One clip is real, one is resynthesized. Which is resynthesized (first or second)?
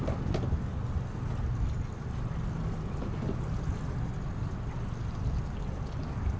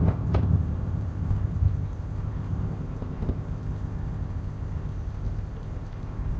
second